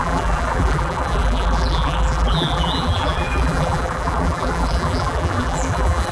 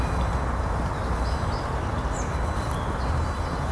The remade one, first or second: first